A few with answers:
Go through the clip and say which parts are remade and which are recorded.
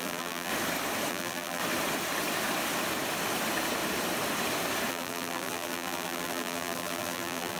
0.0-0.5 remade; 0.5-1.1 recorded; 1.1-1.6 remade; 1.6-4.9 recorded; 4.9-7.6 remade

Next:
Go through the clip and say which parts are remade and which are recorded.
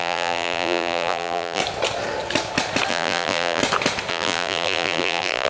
0.0-1.6 remade; 1.6-2.9 recorded; 2.9-3.6 remade; 3.6-4.1 recorded; 4.1-5.5 remade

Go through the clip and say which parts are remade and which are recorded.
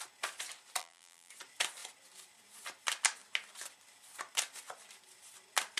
0.0-0.8 recorded; 0.8-1.3 remade; 1.3-5.8 recorded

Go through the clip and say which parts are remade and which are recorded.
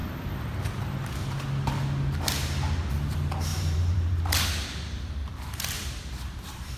0.0-3.5 recorded; 3.5-4.2 remade; 4.2-5.2 recorded; 5.2-6.8 remade